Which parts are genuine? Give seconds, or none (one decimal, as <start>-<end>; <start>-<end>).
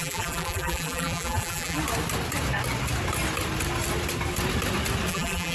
1.8-5.1